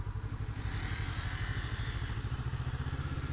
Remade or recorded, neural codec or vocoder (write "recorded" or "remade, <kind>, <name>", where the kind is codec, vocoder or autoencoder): recorded